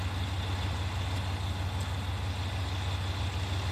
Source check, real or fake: real